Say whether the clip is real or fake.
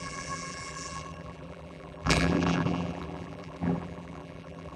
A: fake